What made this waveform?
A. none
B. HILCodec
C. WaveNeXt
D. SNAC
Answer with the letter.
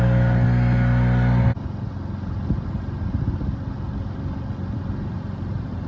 A